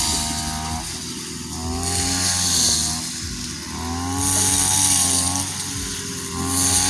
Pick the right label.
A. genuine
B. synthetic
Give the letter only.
A